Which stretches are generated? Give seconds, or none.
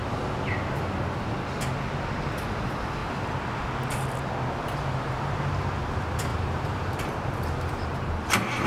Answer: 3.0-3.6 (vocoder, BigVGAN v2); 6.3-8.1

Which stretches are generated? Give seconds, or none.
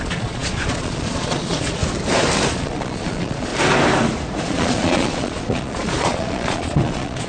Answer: 0.0-1.8 (vocoder, Vocos); 2.5-3.5; 4.4-7.3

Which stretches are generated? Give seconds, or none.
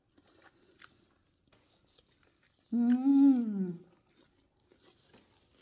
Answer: none